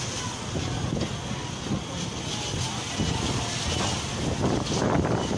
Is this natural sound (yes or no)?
yes